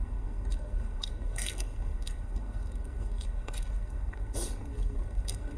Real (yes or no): no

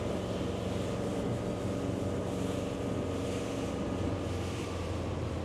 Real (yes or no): yes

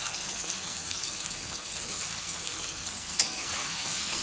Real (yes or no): no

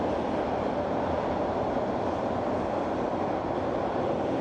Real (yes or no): yes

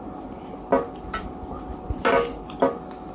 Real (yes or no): yes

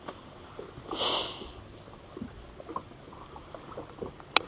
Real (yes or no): yes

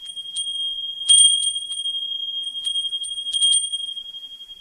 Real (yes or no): no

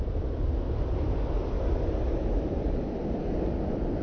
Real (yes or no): yes